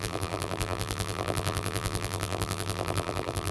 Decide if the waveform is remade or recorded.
remade